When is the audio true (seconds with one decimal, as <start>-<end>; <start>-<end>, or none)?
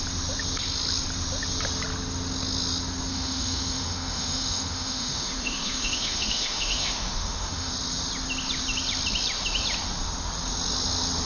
0.0-3.1; 7.7-11.3